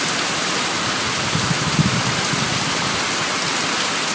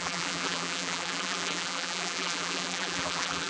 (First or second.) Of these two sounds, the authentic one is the first